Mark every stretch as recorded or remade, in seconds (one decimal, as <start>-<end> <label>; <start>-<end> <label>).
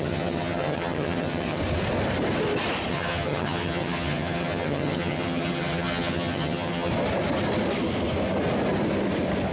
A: 0.0-1.6 remade; 1.6-2.9 recorded; 2.9-6.9 remade; 6.9-9.5 recorded